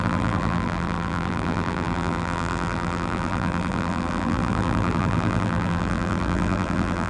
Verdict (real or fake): fake